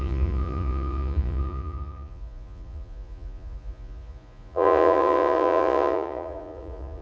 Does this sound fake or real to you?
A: fake